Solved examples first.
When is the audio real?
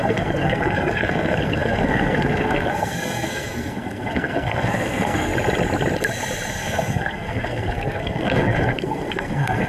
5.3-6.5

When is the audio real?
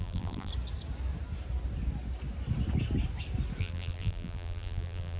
0.5-3.6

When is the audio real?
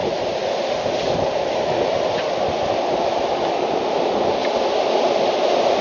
0.0-5.8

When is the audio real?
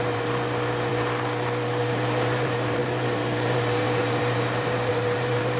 0.9-1.8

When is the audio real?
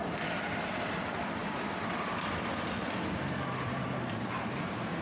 0.0-5.0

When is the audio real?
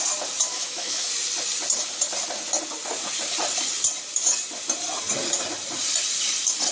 0.0-0.5; 1.1-6.7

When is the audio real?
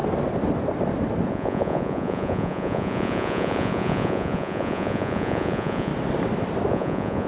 0.0-1.3; 5.9-6.7